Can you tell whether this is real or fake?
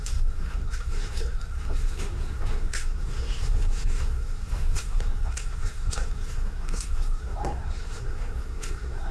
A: fake